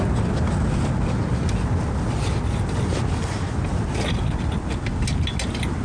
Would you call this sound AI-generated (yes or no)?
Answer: no